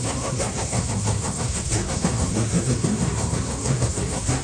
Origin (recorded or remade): remade